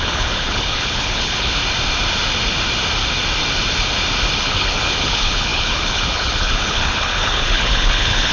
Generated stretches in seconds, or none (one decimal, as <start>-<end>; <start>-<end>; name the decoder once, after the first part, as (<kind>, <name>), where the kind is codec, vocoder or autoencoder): 0.0-1.6 (codec, HILCodec); 4.4-8.3

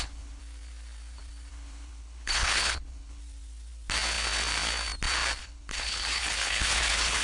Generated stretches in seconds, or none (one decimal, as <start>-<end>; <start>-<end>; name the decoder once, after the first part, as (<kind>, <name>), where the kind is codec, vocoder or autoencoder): 0.0-0.4 (codec, HILCodec); 1.5-3.2; 5.4-7.2

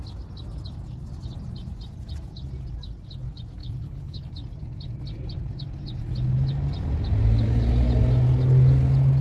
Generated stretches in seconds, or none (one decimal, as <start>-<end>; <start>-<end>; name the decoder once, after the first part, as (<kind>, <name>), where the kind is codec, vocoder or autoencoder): 3.6-4.3 (codec, HILCodec)

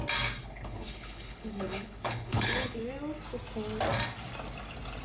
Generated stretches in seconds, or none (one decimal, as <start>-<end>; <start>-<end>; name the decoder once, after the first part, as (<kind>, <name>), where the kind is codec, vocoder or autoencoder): 0.4-2.8 (codec, HILCodec)

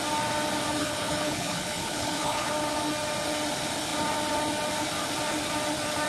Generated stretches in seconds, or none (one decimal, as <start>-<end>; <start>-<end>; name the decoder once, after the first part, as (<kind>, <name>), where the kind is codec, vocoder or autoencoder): 0.8-2.5 (codec, HILCodec)

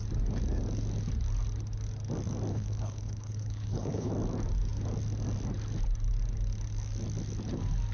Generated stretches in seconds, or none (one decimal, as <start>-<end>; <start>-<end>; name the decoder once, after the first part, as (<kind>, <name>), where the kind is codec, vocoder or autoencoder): 2.5-4.1 (codec, HILCodec)